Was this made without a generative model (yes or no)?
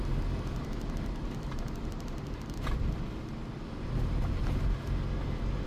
yes